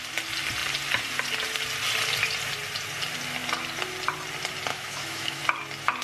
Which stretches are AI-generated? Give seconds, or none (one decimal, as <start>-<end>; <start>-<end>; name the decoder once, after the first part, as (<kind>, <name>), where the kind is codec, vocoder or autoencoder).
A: 4.7-5.4 (autoencoder, DAC-VAE)